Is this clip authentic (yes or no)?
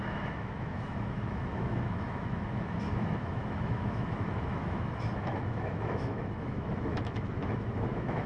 no